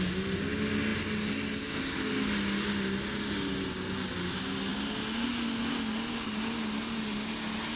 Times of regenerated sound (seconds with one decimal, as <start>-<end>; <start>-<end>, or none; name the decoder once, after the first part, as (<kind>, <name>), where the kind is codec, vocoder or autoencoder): none